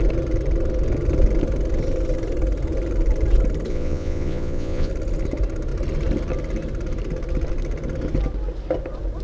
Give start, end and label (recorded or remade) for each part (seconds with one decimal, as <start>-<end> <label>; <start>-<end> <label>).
0.0-3.7 recorded; 3.7-4.9 remade; 4.9-9.2 recorded